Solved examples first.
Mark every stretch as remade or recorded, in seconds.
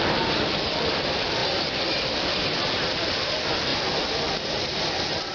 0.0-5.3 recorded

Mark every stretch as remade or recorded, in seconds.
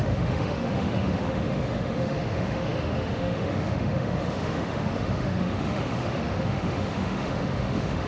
0.0-8.1 remade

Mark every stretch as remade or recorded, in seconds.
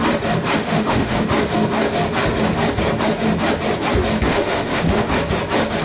0.0-0.6 recorded; 0.6-1.3 remade; 1.3-4.3 recorded; 4.3-5.1 remade; 5.1-5.8 recorded